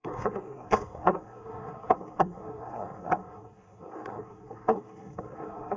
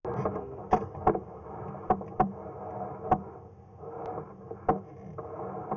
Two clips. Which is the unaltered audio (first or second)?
second